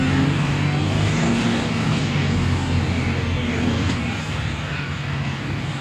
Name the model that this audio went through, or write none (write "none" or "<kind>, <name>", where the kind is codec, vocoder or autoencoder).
codec, DAC